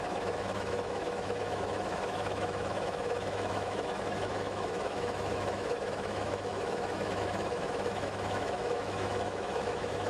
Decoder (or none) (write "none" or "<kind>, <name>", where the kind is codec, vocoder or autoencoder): autoencoder, DAC-VAE